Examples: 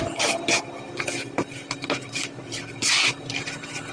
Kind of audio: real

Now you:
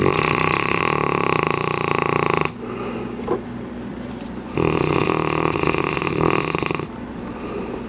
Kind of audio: fake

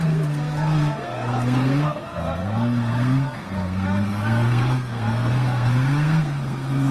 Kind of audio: fake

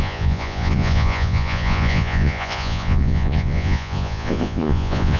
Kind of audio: fake